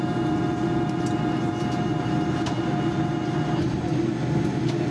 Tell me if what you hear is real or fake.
real